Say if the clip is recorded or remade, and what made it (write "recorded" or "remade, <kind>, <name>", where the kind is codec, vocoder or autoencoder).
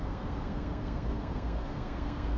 remade, codec, SNAC